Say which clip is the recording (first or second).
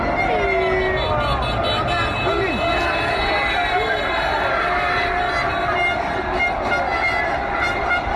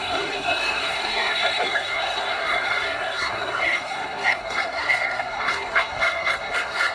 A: first